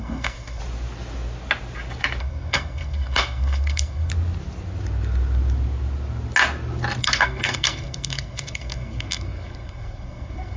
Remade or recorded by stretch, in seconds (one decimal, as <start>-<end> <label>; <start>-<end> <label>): 0.0-0.6 remade; 0.6-2.2 recorded; 2.2-4.1 remade; 4.1-7.0 recorded; 7.0-10.6 remade